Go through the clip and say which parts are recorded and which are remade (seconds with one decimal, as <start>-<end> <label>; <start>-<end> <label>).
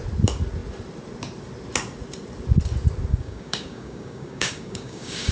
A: 0.0-3.1 recorded; 3.1-5.3 remade